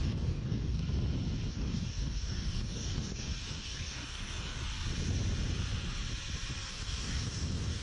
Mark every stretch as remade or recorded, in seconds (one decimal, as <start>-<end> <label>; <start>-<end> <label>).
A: 0.0-0.8 remade; 0.8-1.5 recorded; 1.5-4.6 remade; 4.6-6.7 recorded; 6.7-7.8 remade